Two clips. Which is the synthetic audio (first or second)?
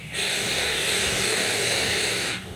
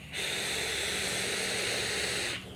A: first